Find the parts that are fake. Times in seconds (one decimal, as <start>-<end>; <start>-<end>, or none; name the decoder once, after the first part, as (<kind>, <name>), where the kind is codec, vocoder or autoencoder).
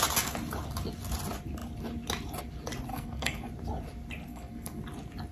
2.9-3.5 (codec, SNAC); 4.3-4.8